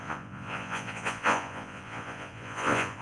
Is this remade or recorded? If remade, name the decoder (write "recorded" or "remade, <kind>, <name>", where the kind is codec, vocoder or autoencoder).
remade, vocoder, Vocos